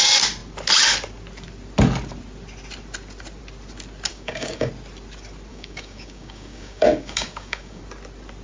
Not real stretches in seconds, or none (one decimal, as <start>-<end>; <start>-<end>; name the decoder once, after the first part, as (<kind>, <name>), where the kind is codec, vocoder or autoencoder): 4.1-4.7 (codec, DAC); 5.5-7.8